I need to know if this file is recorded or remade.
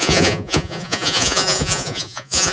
remade